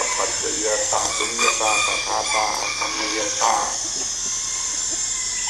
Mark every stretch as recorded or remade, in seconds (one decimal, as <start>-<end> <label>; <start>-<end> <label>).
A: 0.0-0.8 recorded; 0.8-1.6 remade; 1.6-2.6 recorded; 2.6-3.8 remade; 3.8-5.5 recorded